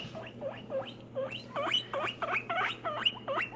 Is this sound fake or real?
real